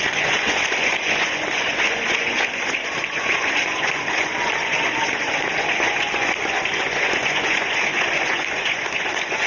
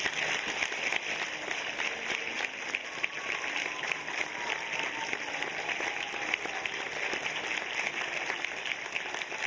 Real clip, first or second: second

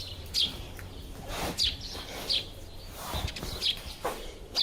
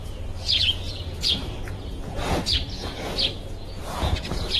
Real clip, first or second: first